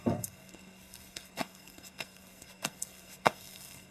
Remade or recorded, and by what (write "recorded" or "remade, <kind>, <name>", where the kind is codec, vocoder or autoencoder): remade, codec, SNAC